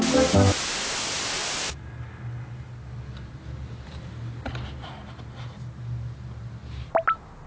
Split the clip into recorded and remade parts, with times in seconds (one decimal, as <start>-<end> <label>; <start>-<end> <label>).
0.0-7.5 recorded